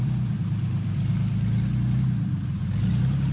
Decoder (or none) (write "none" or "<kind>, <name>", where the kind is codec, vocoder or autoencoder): vocoder, BigVGAN v2